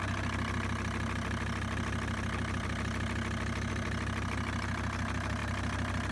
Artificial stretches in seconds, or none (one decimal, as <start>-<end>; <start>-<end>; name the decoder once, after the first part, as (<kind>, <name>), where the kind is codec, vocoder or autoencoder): none